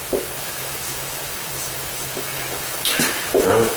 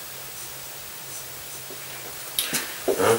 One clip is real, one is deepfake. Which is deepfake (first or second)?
first